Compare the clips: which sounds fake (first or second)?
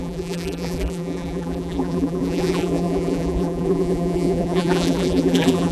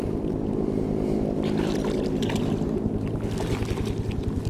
first